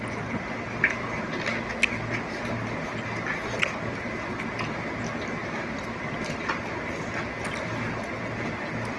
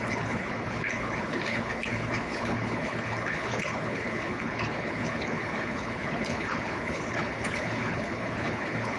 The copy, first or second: second